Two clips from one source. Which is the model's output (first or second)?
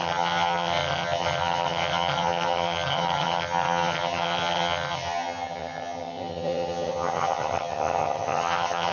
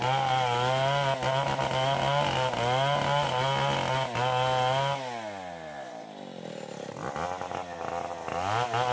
first